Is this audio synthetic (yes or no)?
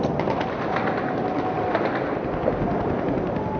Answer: no